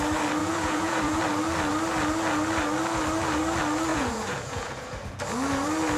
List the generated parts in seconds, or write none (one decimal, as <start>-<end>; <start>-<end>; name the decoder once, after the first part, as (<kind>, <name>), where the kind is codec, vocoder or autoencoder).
0.4-1.2 (vocoder, Vocos); 3.9-5.2